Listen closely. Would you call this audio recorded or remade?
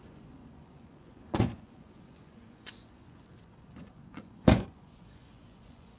remade